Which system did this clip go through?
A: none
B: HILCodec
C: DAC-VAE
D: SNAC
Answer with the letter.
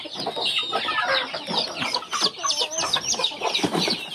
A